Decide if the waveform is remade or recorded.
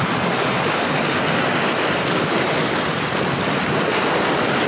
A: recorded